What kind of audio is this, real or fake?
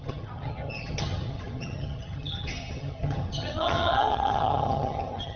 fake